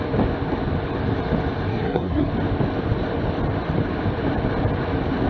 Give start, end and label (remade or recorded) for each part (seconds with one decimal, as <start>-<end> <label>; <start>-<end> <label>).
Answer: 0.0-1.7 recorded; 1.7-2.3 remade; 2.3-5.3 recorded